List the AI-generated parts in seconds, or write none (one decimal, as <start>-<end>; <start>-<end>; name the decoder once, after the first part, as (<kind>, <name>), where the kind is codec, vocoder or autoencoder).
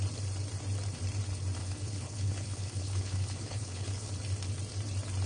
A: 1.6-4.1 (codec, HILCodec)